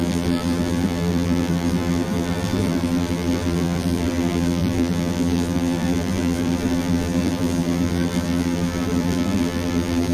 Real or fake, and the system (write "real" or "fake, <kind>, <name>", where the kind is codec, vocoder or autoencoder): fake, vocoder, BigVGAN v2